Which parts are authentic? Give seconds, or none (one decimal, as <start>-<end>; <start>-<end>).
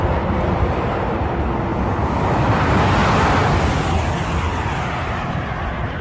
0.0-6.0